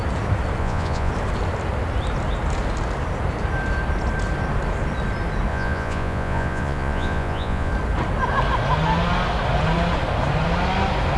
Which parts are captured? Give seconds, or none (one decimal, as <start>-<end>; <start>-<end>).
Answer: 0.0-0.6; 1.1-5.5; 7.7-11.2